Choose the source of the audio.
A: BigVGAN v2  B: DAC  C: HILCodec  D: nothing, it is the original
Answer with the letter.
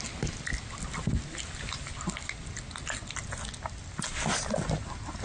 D